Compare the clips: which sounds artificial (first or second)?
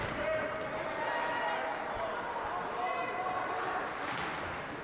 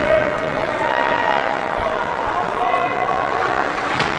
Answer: second